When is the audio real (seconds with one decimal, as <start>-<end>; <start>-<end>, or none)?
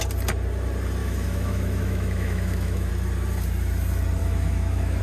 0.0-1.0; 2.9-4.2